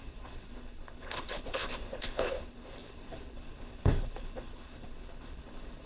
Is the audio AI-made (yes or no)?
yes